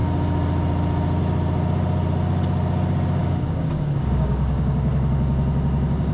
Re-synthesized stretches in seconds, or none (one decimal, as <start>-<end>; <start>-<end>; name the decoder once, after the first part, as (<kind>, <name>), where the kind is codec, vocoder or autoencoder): 3.2-4.9 (codec, DAC)